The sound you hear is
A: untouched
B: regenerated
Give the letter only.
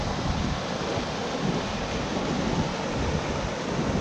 A